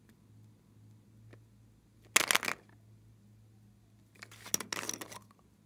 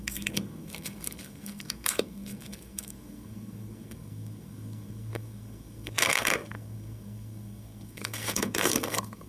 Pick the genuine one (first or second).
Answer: first